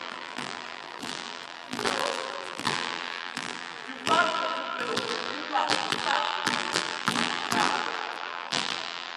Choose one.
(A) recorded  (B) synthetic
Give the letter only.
B